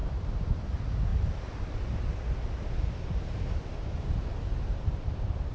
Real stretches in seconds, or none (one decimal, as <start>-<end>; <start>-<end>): 0.0-5.5